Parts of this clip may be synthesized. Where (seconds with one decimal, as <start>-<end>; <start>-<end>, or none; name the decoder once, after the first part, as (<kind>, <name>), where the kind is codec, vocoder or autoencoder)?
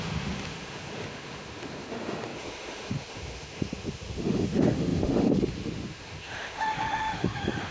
0.0-7.7 (autoencoder, DAC-VAE)